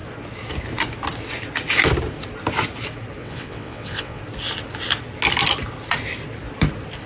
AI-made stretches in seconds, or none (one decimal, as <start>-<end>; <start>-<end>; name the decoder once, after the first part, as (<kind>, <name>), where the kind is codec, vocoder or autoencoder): 3.2-4.2 (vocoder, WaveNeXt)